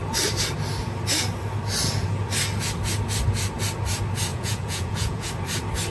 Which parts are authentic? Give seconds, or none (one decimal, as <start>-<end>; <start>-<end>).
0.0-4.3; 5.3-5.9